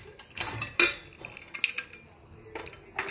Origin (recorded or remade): recorded